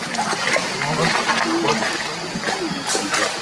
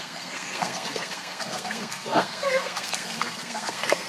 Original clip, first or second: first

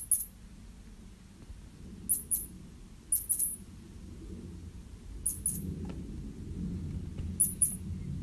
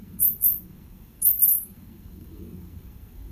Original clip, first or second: first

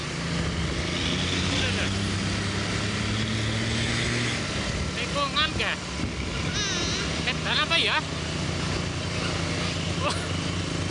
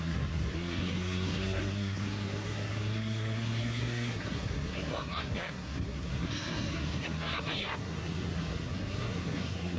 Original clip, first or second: first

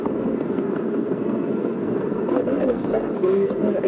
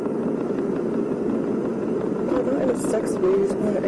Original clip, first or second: second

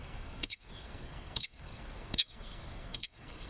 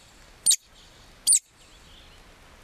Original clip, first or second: second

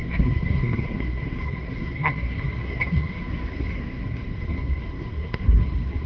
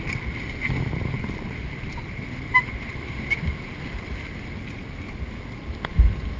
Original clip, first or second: second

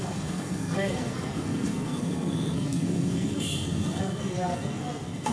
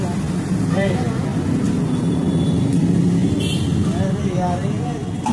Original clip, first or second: second